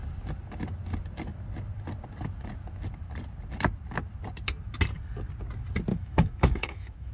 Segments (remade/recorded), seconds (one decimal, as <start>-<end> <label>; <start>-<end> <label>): 0.0-5.9 recorded; 5.9-7.1 remade